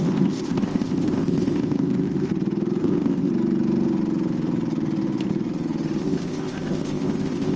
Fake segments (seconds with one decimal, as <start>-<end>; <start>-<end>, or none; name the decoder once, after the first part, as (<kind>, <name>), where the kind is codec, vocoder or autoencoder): 0.0-2.3 (codec, ZipCodec); 2.8-3.3; 6.0-7.6